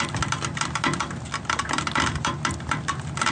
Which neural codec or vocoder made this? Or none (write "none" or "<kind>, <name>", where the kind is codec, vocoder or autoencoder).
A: none